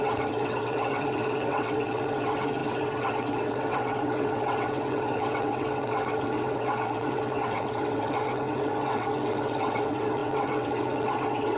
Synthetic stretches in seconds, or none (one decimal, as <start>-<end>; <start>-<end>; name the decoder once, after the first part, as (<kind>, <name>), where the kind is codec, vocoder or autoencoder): 0.0-11.6 (vocoder, WaveNeXt)